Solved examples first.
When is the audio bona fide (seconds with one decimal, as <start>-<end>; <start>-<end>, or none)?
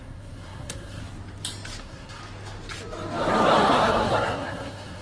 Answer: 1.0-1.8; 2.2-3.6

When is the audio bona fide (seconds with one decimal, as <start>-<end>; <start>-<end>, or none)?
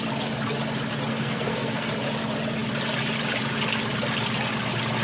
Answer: 0.0-1.1; 1.9-5.0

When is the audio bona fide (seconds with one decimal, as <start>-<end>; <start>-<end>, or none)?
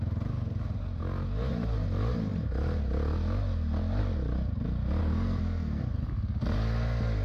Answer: 0.0-5.0; 5.8-7.2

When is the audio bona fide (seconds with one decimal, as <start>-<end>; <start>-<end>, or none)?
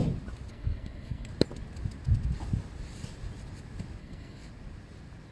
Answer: 0.0-0.5; 1.3-4.0; 4.4-5.3